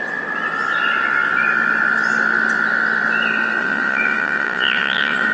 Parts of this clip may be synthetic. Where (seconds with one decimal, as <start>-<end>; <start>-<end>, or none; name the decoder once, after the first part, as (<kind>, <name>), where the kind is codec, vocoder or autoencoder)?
3.6-5.3 (vocoder, WaveNeXt)